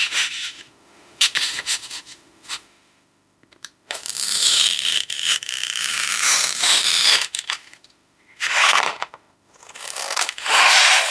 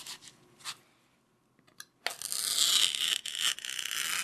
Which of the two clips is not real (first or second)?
first